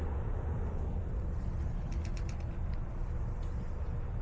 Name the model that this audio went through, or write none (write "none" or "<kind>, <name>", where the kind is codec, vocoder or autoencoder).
vocoder, BigVGAN v2